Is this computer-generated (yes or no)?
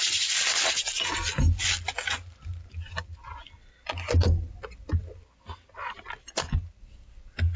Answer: no